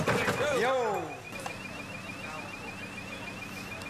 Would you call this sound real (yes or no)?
yes